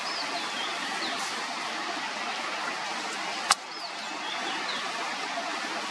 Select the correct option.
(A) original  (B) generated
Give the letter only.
A